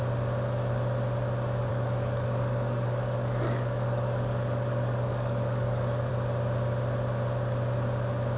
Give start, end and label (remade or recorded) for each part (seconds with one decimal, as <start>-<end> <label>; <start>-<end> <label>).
0.0-1.7 recorded; 1.7-6.1 remade; 6.1-8.4 recorded